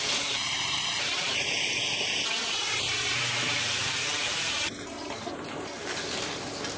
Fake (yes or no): yes